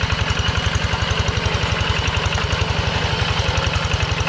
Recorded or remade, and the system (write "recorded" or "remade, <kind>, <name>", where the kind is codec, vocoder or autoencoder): recorded